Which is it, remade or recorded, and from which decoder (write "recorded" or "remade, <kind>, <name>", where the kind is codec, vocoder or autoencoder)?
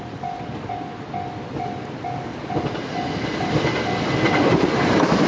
recorded